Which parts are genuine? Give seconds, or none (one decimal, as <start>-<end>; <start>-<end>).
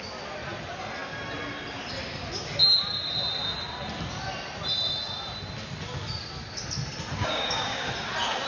0.0-7.2; 7.9-8.5